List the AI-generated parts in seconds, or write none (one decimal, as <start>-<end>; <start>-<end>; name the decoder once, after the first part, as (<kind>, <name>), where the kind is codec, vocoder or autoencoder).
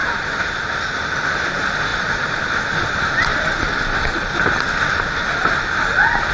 0.0-1.1 (vocoder, BigVGAN v2); 1.9-2.4